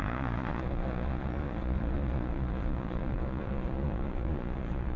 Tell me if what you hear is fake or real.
fake